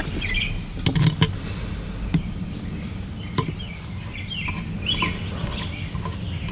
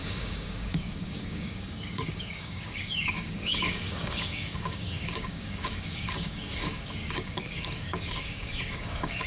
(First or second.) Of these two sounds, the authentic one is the first